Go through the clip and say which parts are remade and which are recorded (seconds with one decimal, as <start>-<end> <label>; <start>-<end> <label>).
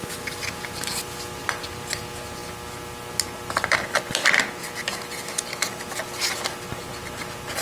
0.0-7.6 recorded